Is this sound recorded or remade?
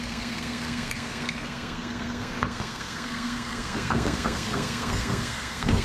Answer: remade